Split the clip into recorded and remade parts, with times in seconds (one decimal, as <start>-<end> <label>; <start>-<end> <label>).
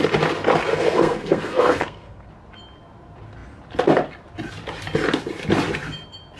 0.0-0.7 recorded; 0.7-2.3 remade; 2.3-6.4 recorded